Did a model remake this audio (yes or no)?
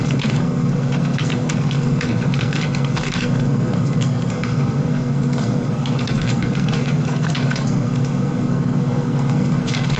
yes